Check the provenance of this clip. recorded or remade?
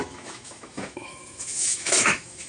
remade